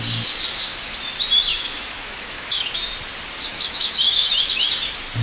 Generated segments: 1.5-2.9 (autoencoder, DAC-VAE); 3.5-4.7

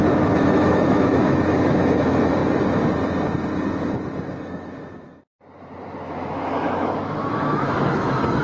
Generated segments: 0.0-2.4 (autoencoder, DAC-VAE); 6.1-8.4

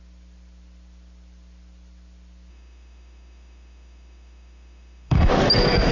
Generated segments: 2.5-5.3 (autoencoder, DAC-VAE)